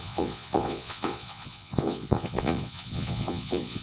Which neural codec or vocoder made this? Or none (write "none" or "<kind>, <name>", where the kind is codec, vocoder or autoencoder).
vocoder, Vocos